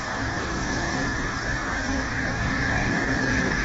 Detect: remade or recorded remade